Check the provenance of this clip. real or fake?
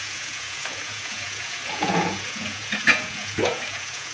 fake